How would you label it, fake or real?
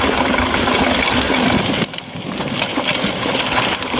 real